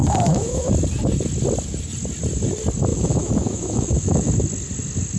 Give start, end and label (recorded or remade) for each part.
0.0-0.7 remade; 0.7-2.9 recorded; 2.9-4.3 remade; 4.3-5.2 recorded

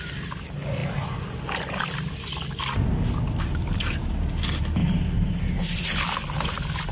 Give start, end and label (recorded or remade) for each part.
0.0-6.9 recorded

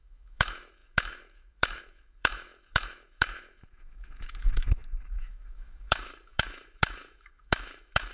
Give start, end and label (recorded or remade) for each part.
0.0-8.1 remade

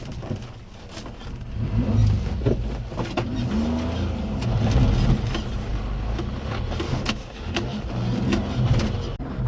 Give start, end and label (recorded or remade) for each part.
0.0-6.9 recorded; 6.9-7.8 remade; 7.8-9.5 recorded

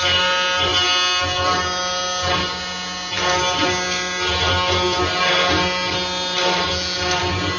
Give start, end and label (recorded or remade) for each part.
0.0-7.6 recorded

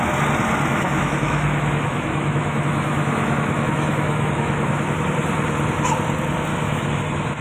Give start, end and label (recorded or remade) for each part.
0.0-0.7 recorded; 0.7-5.1 remade; 5.1-6.5 recorded; 6.5-7.0 remade; 7.0-7.4 recorded

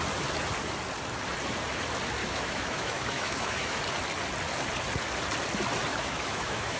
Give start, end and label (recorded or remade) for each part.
0.0-2.2 recorded; 2.2-3.8 remade; 3.8-5.9 recorded; 5.9-6.8 remade